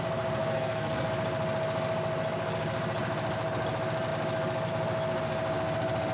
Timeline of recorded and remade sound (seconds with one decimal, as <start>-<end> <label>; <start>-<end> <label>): 0.0-0.4 recorded; 0.4-1.1 remade; 1.1-6.1 recorded